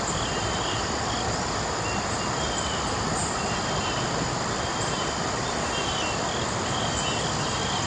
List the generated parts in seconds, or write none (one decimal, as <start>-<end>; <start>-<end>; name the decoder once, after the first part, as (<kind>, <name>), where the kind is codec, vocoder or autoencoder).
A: none